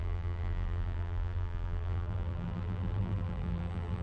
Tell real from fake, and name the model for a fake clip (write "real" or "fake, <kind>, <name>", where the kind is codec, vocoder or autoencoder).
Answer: fake, vocoder, BigVGAN v2